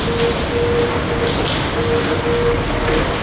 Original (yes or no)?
yes